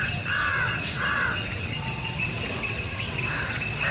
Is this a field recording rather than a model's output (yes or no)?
no